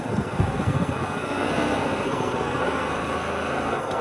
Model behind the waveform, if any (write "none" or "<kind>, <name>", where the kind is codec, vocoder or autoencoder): codec, SNAC